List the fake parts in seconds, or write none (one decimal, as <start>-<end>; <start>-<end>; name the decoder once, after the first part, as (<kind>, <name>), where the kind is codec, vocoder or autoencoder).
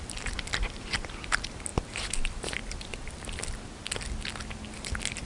none